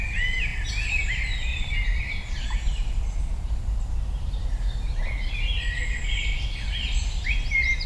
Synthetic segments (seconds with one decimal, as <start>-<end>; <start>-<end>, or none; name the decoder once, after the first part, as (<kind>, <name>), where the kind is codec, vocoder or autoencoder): 1.5-4.5 (vocoder, BigVGAN v2)